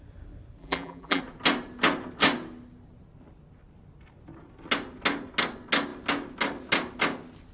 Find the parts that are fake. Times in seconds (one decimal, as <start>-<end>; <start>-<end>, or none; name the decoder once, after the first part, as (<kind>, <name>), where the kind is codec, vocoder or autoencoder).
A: 0.6-1.2 (vocoder, BigVGAN v2)